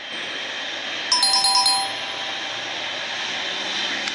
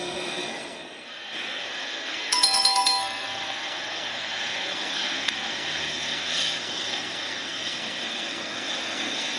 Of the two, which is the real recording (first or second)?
first